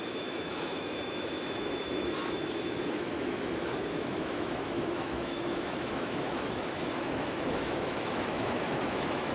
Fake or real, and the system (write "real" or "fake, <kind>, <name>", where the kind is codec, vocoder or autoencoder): fake, autoencoder, DAC-VAE